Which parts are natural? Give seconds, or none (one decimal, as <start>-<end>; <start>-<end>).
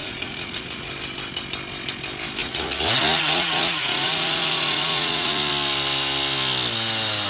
0.9-2.4; 5.5-7.3